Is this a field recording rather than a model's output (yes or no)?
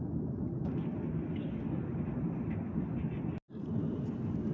yes